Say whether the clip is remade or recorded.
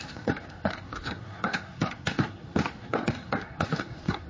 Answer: remade